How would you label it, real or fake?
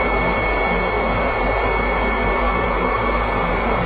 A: fake